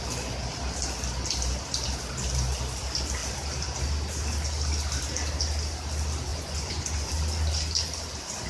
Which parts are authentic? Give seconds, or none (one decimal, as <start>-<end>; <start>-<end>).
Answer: 0.0-6.3; 7.1-8.5